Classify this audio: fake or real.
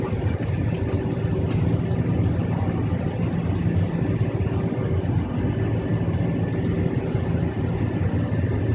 real